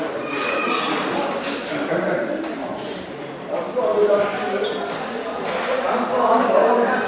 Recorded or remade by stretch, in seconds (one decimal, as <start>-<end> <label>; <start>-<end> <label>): 0.0-1.6 recorded; 1.6-3.6 remade; 3.6-7.1 recorded